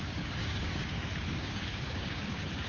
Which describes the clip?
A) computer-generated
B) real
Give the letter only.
A